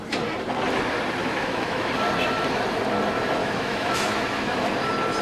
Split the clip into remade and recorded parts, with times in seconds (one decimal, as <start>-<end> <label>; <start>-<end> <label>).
0.0-1.2 recorded; 1.2-1.9 remade; 1.9-3.4 recorded; 3.4-4.7 remade; 4.7-5.2 recorded

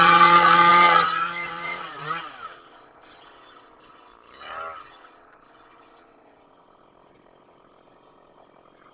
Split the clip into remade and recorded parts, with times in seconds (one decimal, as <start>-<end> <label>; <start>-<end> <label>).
0.0-4.1 remade; 4.1-4.8 recorded; 4.8-8.9 remade